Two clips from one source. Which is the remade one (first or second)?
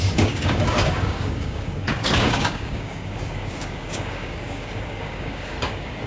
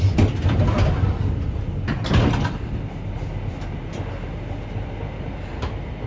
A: first